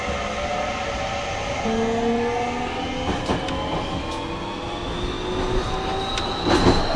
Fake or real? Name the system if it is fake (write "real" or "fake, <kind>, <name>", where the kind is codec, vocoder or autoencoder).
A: real